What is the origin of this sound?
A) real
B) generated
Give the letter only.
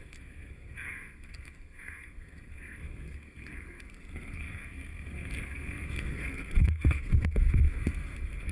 B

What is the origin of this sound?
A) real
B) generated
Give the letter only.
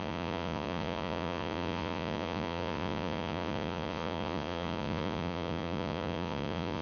B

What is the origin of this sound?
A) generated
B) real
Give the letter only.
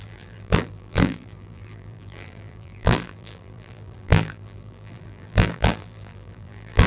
A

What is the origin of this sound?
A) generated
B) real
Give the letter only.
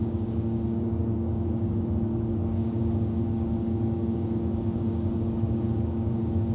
A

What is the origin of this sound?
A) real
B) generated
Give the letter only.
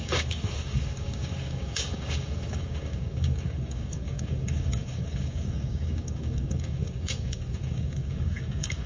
B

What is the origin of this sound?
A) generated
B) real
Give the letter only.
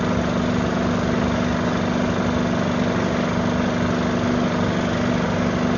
B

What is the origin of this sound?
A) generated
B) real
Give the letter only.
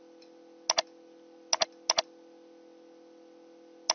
B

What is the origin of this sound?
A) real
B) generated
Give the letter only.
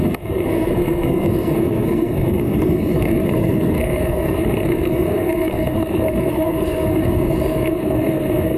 B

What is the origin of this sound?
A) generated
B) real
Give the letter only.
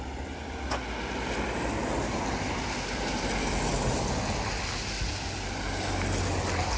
B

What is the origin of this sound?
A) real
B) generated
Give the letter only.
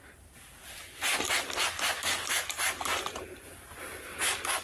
A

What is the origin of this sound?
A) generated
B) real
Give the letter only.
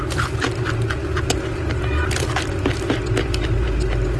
B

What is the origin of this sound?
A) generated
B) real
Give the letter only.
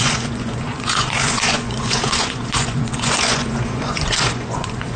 A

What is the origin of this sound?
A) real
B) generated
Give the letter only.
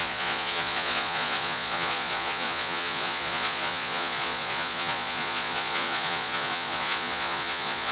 B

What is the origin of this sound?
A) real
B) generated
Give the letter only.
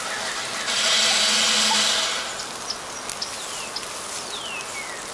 A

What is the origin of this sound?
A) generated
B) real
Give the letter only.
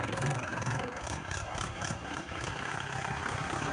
A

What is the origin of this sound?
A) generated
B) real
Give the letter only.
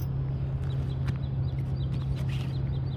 B